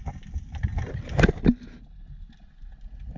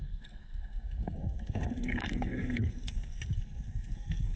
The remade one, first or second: second